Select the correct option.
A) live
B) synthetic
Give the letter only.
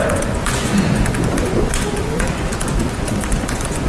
B